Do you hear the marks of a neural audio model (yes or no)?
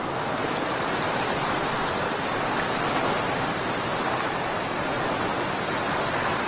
no